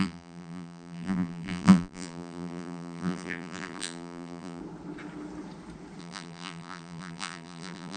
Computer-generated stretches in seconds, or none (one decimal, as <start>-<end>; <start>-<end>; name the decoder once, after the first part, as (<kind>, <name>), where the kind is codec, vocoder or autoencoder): 0.0-4.6 (vocoder, BigVGAN v2); 6.0-8.0